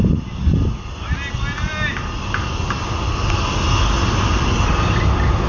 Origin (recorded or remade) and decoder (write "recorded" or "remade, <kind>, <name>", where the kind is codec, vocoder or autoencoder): recorded